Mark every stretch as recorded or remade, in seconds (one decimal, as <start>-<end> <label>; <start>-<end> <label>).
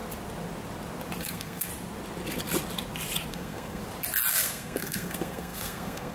0.0-1.2 recorded; 1.2-1.7 remade; 1.7-3.3 recorded; 3.3-3.8 remade; 3.8-4.3 recorded; 4.3-6.1 remade